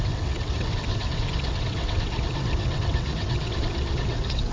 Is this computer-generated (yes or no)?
yes